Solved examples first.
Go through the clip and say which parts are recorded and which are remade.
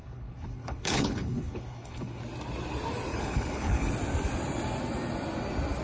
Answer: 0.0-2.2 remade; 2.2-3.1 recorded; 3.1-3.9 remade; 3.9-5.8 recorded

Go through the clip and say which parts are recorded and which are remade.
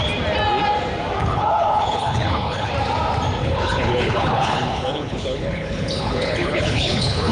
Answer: 0.0-1.2 recorded; 1.2-2.7 remade; 2.7-3.4 recorded; 3.4-7.3 remade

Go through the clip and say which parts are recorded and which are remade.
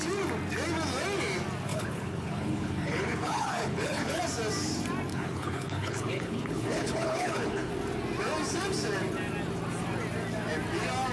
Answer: 0.0-1.7 recorded; 1.7-4.2 remade; 4.2-5.1 recorded; 5.1-7.7 remade; 7.7-11.1 recorded